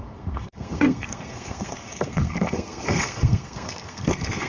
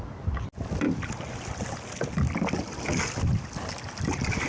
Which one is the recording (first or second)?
second